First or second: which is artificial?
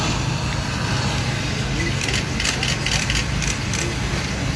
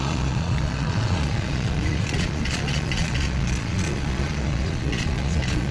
second